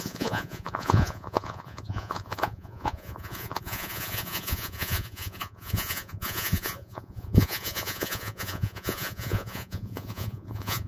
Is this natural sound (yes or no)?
no